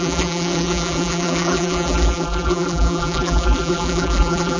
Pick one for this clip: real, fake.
fake